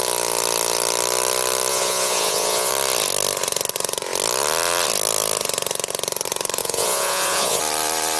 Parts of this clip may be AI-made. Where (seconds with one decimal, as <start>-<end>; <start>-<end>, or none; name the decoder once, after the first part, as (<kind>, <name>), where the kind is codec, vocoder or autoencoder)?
1.7-2.7 (vocoder, Vocos); 6.6-7.6